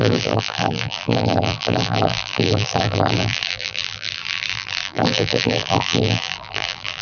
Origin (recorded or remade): remade